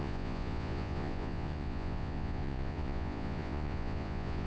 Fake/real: fake